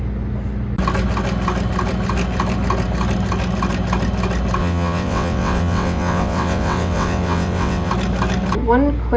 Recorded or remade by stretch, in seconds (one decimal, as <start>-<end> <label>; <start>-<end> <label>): 0.0-4.6 recorded; 4.6-7.9 remade; 7.9-9.2 recorded